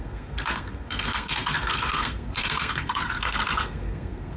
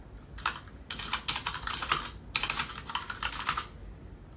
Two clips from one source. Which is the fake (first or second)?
first